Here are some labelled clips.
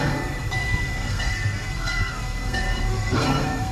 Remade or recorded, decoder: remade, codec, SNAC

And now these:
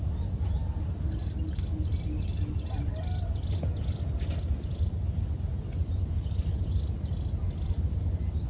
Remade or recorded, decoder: recorded